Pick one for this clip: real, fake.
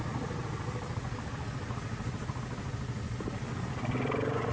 real